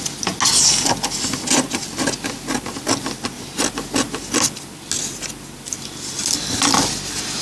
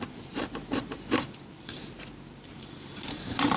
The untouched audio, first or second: first